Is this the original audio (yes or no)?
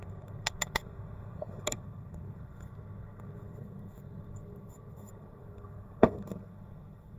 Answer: no